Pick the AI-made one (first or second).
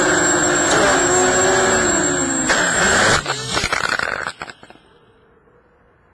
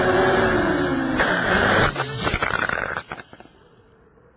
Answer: second